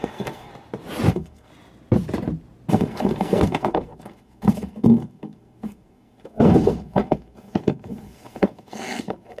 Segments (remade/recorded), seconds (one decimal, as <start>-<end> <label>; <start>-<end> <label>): 0.0-0.5 remade; 0.5-1.1 recorded; 1.1-1.5 remade; 1.5-2.7 recorded; 2.7-9.4 remade